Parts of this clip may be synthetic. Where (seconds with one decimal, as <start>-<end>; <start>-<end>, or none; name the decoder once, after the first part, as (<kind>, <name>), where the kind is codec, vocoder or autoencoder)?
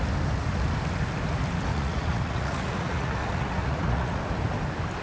1.7-4.2 (vocoder, Vocos)